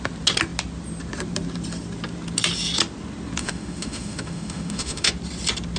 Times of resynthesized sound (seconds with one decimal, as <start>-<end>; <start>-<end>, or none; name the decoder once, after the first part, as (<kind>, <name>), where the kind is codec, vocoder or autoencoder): 3.4-5.1 (autoencoder, DAC-VAE)